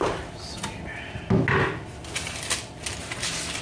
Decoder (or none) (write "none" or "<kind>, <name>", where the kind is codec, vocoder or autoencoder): none